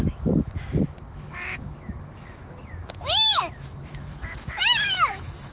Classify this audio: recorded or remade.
remade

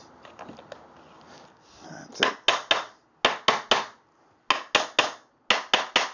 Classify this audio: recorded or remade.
recorded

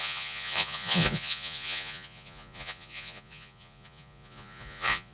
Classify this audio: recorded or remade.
remade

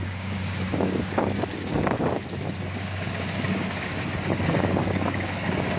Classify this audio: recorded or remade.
remade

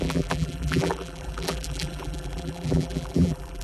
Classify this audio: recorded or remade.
remade